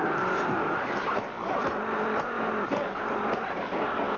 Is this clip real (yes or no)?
yes